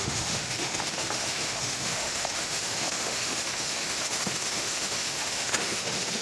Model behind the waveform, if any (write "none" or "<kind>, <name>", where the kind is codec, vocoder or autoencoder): autoencoder, DAC-VAE